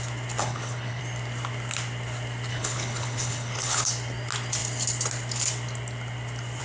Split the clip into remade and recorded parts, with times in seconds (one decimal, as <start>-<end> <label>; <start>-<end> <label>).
0.0-0.4 recorded; 0.4-1.0 remade; 1.0-2.5 recorded; 2.5-3.9 remade; 3.9-6.6 recorded